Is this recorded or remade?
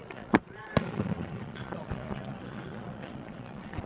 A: remade